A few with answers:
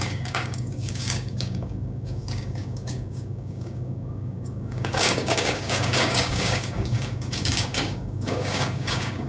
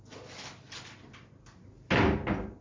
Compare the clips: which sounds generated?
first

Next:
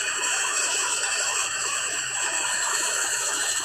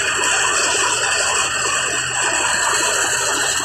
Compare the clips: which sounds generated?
first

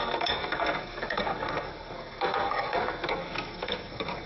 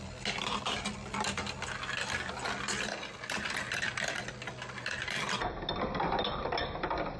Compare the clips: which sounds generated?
first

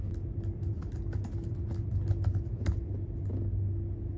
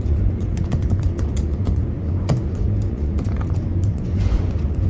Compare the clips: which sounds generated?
second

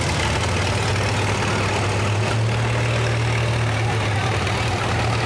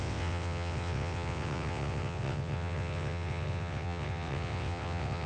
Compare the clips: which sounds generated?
second